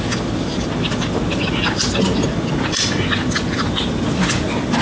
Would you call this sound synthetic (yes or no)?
no